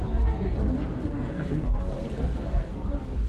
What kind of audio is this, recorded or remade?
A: remade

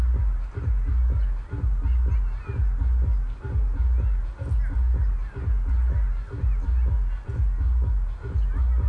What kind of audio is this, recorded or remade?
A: recorded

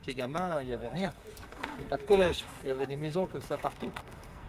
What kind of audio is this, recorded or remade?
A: remade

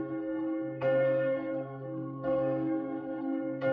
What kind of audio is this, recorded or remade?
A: remade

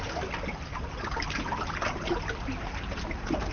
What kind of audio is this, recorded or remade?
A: recorded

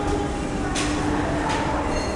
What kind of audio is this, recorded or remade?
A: recorded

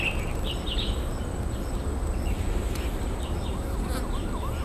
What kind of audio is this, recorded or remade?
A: recorded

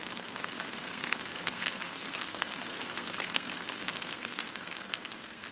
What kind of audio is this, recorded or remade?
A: remade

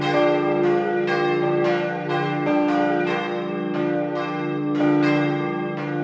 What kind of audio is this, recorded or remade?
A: recorded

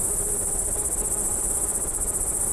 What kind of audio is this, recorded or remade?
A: recorded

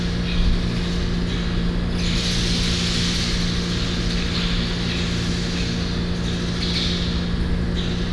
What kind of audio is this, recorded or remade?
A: recorded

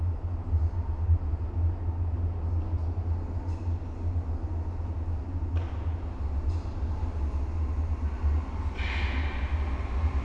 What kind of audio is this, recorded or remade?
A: recorded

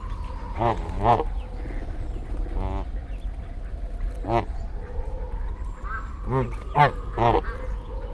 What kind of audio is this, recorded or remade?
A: recorded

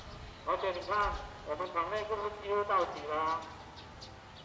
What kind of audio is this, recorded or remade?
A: recorded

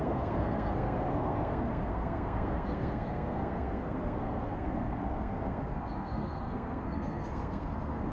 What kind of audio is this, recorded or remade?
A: remade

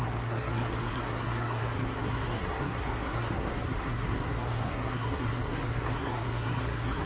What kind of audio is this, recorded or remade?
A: remade